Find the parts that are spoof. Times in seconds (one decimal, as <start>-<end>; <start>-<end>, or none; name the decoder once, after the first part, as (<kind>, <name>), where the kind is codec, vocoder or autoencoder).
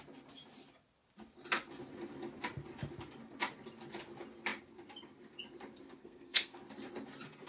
6.0-6.6 (codec, SNAC)